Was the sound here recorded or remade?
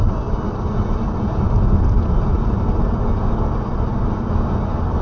recorded